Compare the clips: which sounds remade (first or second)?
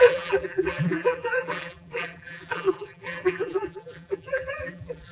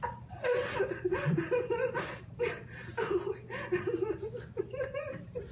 first